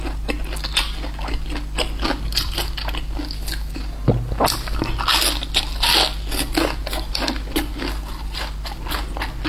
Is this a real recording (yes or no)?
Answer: yes